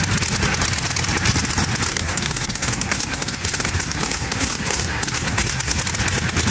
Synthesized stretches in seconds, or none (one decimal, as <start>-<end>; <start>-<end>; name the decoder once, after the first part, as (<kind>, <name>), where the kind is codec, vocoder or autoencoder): 1.9-5.8 (codec, SNAC)